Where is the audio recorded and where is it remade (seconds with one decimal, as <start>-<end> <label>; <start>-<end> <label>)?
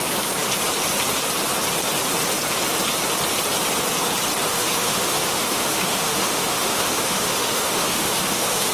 0.0-4.5 recorded; 4.5-8.7 remade